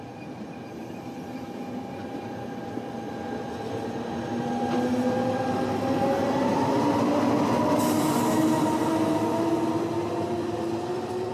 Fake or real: real